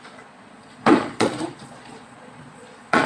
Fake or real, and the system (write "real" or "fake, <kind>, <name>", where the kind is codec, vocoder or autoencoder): fake, vocoder, Vocos